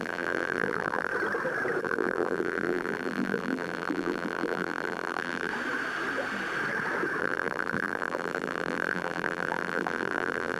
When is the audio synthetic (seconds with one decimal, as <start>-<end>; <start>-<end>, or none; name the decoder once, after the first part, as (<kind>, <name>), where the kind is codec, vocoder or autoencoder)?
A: 0.0-1.1 (vocoder, BigVGAN v2); 1.8-5.5; 7.2-10.6